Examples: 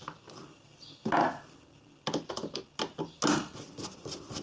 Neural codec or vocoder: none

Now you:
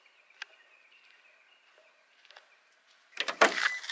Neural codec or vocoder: none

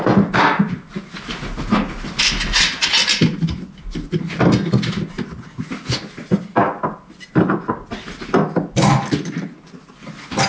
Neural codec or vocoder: none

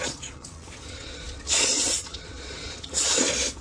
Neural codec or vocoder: vocoder, Vocos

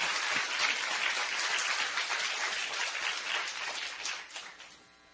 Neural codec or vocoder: none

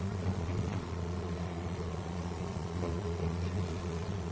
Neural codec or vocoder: vocoder, Vocos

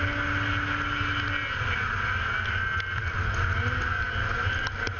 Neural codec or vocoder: none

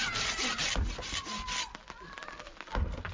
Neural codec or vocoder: none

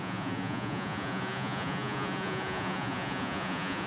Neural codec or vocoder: vocoder, Vocos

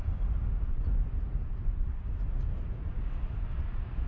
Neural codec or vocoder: none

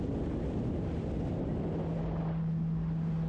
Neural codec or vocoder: none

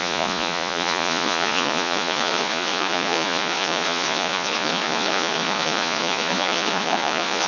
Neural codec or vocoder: vocoder, Vocos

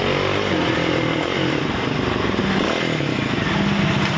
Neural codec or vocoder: none